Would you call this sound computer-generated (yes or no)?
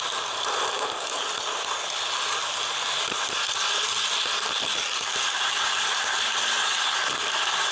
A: no